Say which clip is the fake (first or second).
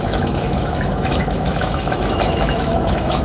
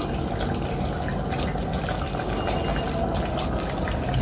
first